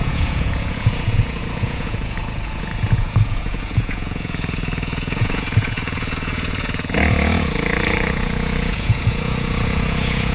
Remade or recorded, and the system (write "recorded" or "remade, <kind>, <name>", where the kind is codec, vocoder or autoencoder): remade, vocoder, Vocos